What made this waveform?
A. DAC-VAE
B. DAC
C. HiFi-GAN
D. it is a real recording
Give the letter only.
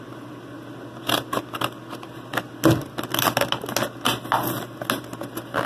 D